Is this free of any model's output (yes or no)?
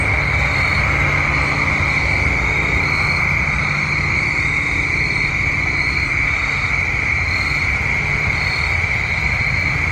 yes